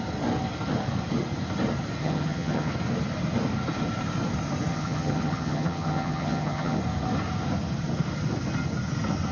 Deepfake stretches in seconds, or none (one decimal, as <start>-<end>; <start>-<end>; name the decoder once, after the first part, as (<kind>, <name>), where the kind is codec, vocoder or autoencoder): 2.0-2.7 (vocoder, HiFi-GAN); 4.7-6.8